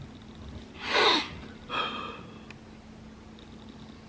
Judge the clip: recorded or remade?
recorded